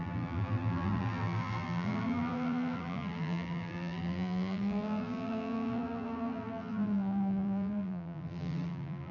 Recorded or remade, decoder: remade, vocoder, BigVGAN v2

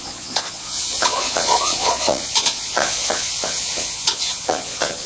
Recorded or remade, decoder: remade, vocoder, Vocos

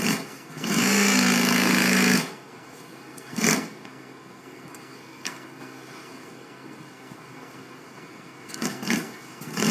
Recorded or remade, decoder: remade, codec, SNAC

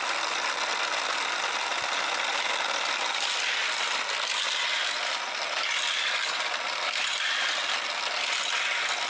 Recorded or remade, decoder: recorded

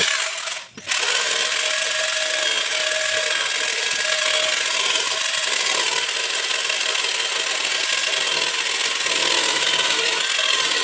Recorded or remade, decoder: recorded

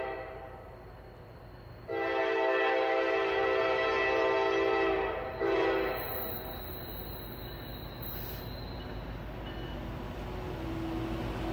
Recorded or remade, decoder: recorded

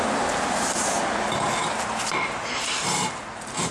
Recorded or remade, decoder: recorded